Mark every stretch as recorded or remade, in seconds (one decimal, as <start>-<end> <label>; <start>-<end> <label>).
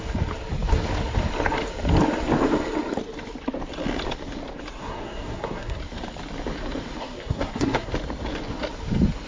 0.0-4.8 recorded; 4.8-5.8 remade; 5.8-7.0 recorded; 7.0-7.9 remade; 7.9-9.3 recorded